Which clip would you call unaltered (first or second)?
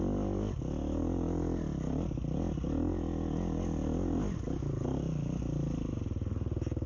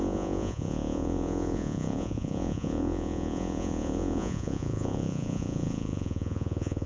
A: first